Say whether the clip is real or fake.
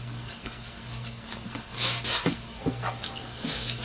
fake